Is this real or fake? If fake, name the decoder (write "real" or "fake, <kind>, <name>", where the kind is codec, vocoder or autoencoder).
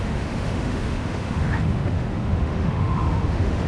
fake, autoencoder, DAC-VAE